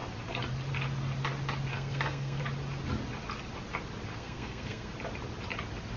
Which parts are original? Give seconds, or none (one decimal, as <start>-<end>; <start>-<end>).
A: 0.0-1.7; 2.4-4.1; 4.9-6.0